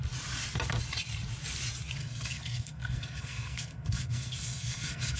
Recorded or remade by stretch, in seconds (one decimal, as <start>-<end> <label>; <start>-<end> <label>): 0.0-2.0 recorded; 2.0-5.2 remade